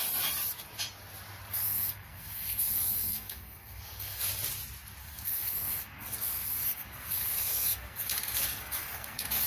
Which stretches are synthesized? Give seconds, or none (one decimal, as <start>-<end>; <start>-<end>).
1.5-4.3; 5.0-9.5